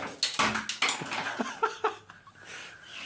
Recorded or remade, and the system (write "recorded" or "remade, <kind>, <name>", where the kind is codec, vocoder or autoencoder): recorded